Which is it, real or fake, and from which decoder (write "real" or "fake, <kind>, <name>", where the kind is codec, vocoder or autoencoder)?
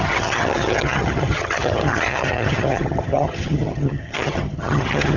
fake, vocoder, HiFi-GAN